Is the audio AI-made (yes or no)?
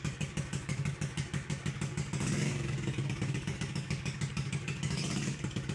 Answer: yes